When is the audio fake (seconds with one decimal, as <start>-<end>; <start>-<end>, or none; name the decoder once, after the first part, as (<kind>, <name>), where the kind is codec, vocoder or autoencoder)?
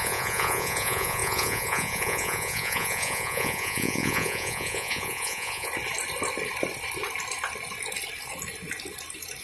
0.0-5.7 (vocoder, Vocos)